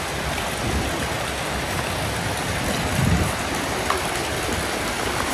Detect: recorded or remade recorded